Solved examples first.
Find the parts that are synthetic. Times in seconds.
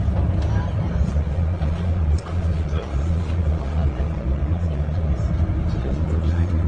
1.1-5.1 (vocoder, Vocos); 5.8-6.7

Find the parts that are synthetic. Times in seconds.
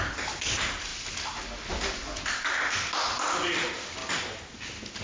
none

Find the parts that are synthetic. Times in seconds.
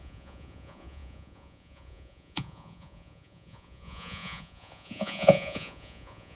0.0-6.4 (vocoder, Vocos)